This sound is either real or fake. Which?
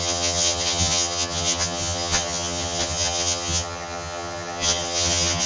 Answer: fake